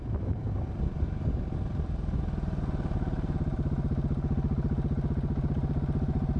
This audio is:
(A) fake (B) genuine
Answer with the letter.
B